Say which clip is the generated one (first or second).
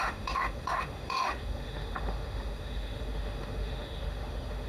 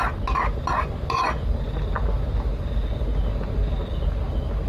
first